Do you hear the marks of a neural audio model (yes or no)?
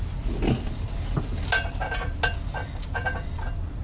no